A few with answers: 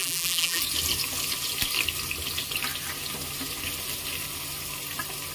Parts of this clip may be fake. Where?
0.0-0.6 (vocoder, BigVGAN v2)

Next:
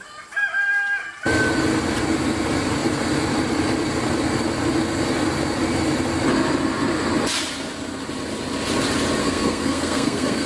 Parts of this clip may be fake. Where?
9.2-10.5 (codec, SNAC)

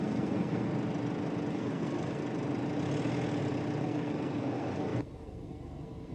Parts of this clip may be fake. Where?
0.0-0.7 (codec, SNAC); 1.5-2.2; 3.8-6.1

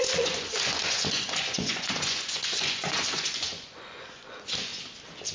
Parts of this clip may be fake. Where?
0.0-4.7 (vocoder, Vocos)

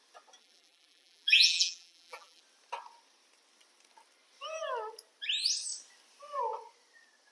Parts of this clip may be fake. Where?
0.4-2.4 (vocoder, BigVGAN v2)

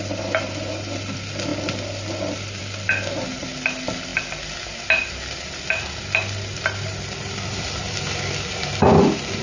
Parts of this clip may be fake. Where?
0.0-1.5 (vocoder, BigVGAN v2); 2.6-4.1; 6.0-9.4

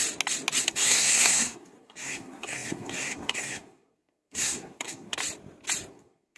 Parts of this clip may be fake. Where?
0.6-5.2 (codec, SNAC); 5.9-6.4